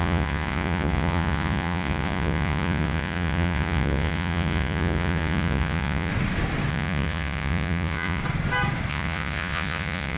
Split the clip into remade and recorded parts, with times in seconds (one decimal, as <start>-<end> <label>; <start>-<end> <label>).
0.0-6.1 remade; 6.1-6.7 recorded; 6.7-8.2 remade; 8.2-8.9 recorded; 8.9-10.2 remade